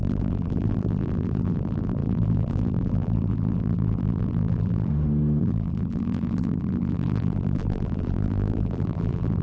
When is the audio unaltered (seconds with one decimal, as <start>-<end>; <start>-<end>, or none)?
4.9-5.4